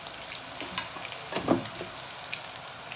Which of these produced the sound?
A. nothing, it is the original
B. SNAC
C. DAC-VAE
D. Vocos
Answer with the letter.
A